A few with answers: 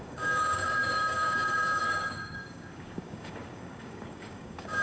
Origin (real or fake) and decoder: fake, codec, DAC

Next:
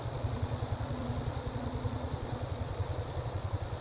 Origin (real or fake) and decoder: fake, vocoder, Vocos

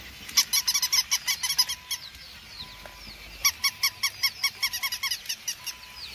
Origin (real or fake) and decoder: real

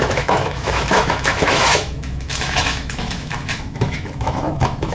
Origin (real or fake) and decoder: fake, autoencoder, DAC-VAE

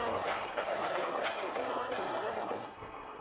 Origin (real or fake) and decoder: fake, codec, SNAC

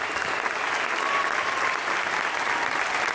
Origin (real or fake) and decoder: real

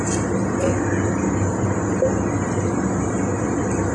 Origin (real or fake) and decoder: real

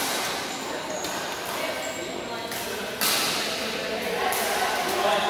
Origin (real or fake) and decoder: real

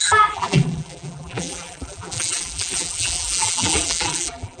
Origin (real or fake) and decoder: fake, vocoder, BigVGAN v2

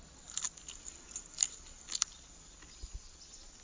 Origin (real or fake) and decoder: real